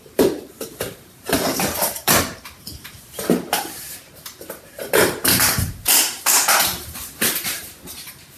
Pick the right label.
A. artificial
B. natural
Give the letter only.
A